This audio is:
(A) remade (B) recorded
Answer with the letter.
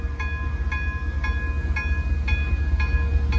B